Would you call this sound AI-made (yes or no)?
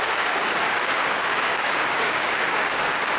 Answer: yes